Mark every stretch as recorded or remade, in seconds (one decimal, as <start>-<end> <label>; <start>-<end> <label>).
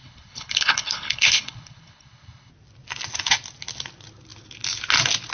0.0-2.5 remade; 2.5-5.3 recorded